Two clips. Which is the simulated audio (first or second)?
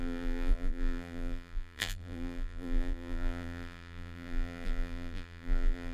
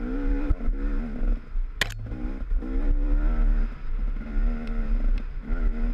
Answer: first